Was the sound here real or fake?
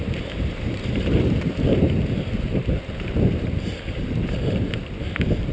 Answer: fake